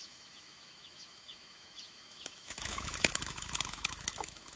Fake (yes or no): yes